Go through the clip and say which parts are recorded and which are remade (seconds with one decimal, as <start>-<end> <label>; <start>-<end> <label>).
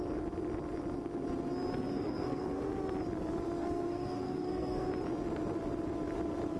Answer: 0.0-1.9 recorded; 1.9-2.7 remade; 2.7-3.6 recorded; 3.6-4.9 remade; 4.9-6.6 recorded